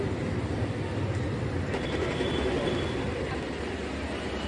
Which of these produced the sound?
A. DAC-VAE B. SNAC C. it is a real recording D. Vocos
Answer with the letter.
C